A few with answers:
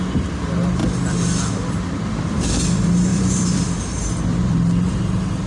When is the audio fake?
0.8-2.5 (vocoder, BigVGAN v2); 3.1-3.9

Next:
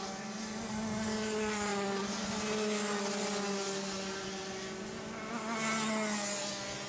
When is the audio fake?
none

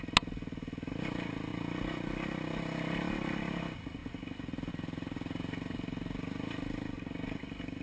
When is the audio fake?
none

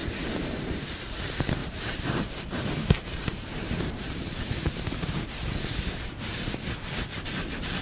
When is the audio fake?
0.0-1.0 (vocoder, BigVGAN v2); 1.6-2.2; 3.1-6.5